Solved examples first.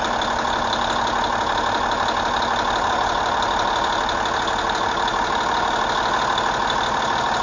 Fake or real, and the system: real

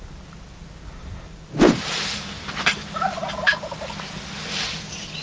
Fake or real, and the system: real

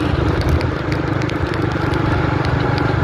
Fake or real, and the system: real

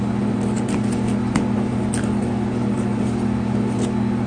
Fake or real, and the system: real